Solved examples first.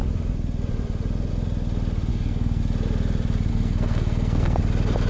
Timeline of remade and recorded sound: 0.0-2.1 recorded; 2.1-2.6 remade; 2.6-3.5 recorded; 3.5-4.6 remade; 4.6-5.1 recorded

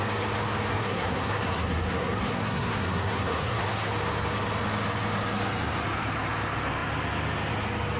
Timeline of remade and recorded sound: 0.0-0.7 recorded; 0.7-3.9 remade; 3.9-8.0 recorded

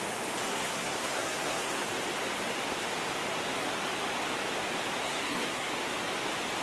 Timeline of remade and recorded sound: 0.0-0.5 recorded; 0.5-1.8 remade; 1.8-5.0 recorded; 5.0-5.7 remade; 5.7-6.6 recorded

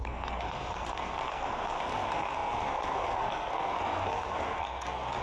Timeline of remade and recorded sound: 0.0-5.2 remade

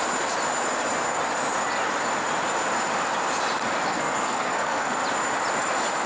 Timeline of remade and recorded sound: 0.0-3.9 recorded; 3.9-5.0 remade; 5.0-6.1 recorded